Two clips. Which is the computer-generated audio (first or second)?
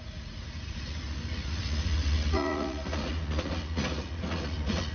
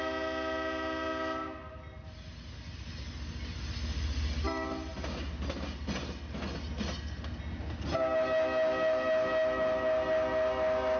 first